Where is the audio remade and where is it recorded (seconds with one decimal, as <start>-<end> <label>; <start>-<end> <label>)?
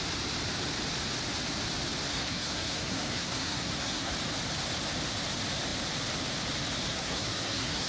0.0-2.1 recorded; 2.1-4.1 remade; 4.1-6.9 recorded; 6.9-7.9 remade